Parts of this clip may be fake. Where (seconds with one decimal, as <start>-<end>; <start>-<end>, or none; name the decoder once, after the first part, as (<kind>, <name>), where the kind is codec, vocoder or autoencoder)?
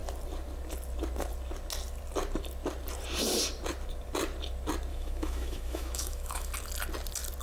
4.9-6.5 (autoencoder, DAC-VAE)